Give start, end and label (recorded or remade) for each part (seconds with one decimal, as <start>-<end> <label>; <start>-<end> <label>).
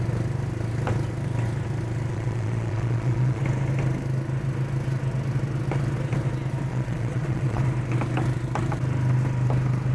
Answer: 0.0-2.1 recorded; 2.1-3.4 remade; 3.4-6.7 recorded; 6.7-7.6 remade; 7.6-9.9 recorded